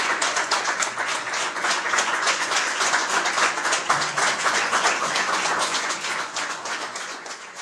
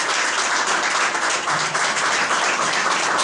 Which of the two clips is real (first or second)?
second